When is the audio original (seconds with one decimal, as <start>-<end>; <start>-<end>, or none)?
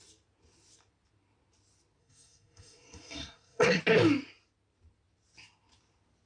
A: 0.0-2.0; 3.8-6.3